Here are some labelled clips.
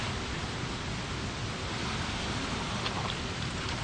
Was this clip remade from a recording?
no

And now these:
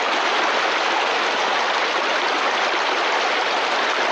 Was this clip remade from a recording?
no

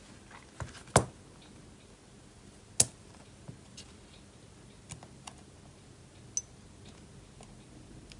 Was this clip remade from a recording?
no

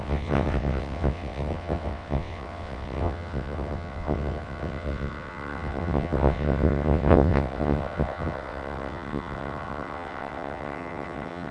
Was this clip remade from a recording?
yes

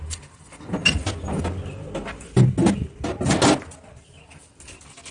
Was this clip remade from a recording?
no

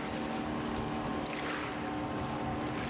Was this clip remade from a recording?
no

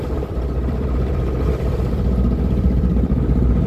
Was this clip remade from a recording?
yes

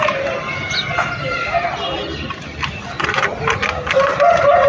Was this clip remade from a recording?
no